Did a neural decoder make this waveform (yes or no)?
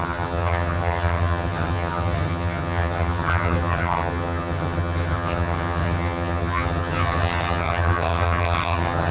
yes